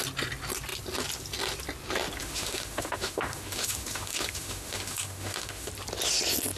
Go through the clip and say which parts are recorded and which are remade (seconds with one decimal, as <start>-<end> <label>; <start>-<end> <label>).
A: 0.0-2.2 recorded; 2.2-5.7 remade; 5.7-6.6 recorded